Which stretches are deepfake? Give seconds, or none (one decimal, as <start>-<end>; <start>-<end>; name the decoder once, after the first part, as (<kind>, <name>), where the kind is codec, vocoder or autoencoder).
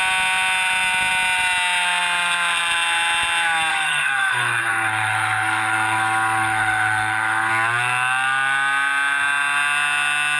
3.7-7.5 (codec, SNAC)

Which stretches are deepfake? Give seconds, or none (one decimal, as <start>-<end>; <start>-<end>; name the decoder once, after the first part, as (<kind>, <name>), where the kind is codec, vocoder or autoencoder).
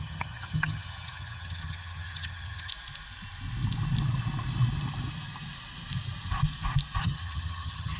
0.0-2.7 (vocoder, HiFi-GAN); 7.0-8.0